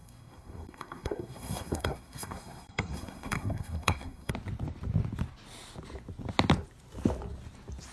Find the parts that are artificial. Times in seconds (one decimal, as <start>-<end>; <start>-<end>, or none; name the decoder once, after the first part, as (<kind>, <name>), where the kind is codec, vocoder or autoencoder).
0.0-4.3 (codec, SNAC)